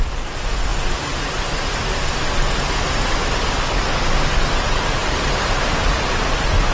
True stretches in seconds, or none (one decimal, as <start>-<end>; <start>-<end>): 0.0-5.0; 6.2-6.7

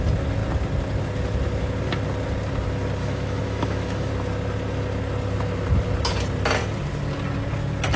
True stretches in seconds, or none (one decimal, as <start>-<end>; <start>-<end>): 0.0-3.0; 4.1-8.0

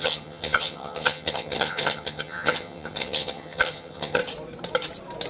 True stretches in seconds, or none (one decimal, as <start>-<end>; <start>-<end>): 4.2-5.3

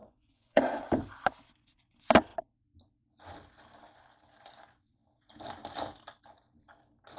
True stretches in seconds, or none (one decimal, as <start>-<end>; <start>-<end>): 0.8-7.2